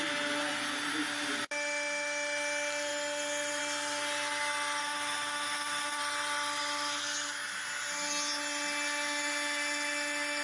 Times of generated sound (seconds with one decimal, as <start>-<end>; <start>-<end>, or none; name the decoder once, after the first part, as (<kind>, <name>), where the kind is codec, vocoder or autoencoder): 4.8-6.0 (autoencoder, DAC-VAE)